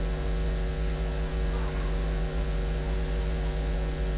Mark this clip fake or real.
fake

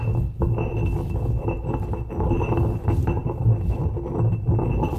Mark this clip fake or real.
real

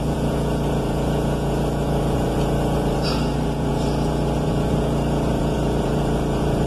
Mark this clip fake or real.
fake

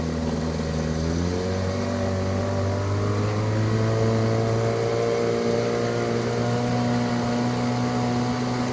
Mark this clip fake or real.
real